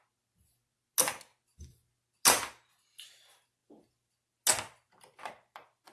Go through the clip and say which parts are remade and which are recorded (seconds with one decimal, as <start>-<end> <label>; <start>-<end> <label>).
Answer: 0.0-5.9 recorded